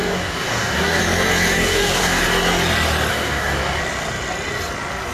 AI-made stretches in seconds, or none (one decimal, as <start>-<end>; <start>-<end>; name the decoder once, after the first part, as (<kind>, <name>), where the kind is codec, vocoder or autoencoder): 0.0-1.0 (codec, DAC); 1.5-2.2; 3.1-3.8